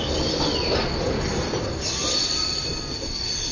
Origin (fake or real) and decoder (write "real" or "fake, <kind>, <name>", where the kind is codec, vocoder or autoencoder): real